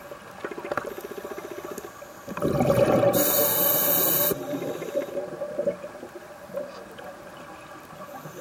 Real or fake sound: real